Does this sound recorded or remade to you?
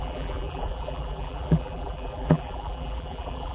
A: remade